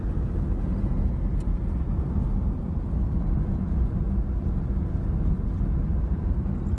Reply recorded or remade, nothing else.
recorded